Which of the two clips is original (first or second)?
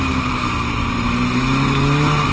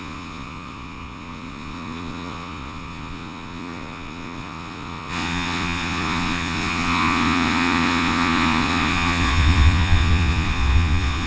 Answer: first